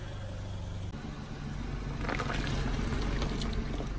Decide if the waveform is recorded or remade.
recorded